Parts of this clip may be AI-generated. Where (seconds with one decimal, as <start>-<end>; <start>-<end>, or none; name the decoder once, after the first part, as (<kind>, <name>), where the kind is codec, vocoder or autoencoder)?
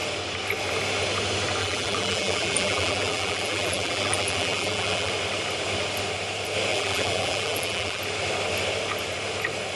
1.6-5.1 (vocoder, BigVGAN v2); 6.7-8.0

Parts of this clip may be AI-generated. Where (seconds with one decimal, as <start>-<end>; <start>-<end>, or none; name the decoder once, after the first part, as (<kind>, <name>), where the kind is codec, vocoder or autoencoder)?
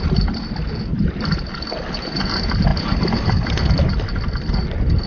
0.9-1.5 (vocoder, BigVGAN v2)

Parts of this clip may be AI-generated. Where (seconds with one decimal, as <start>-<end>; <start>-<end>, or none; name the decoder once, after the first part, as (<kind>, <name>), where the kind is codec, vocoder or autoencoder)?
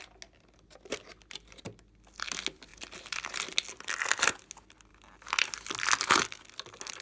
4.9-5.7 (vocoder, BigVGAN v2)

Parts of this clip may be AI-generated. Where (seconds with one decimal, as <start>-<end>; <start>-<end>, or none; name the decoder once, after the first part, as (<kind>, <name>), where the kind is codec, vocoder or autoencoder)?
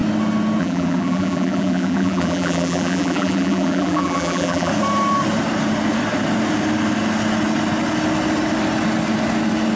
0.6-4.7 (vocoder, BigVGAN v2)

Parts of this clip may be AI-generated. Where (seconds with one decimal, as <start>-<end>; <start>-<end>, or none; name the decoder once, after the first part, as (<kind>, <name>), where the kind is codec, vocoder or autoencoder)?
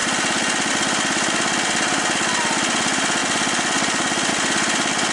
none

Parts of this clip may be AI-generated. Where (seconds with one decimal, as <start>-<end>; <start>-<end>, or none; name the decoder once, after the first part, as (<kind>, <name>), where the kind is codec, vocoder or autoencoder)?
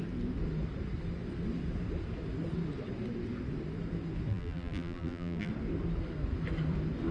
4.3-5.5 (vocoder, BigVGAN v2)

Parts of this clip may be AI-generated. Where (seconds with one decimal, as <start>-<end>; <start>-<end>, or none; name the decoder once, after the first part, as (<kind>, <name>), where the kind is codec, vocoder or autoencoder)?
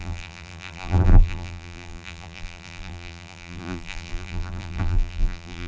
0.0-5.7 (vocoder, BigVGAN v2)